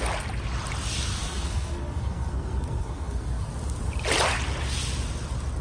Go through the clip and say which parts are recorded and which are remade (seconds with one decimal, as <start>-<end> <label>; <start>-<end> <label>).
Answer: 0.0-1.2 recorded; 1.2-3.5 remade; 3.5-5.6 recorded